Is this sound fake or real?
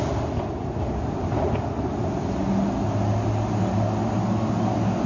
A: real